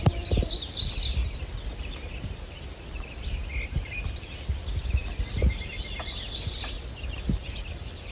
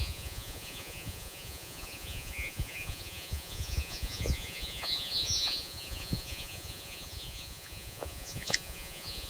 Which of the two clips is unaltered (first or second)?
first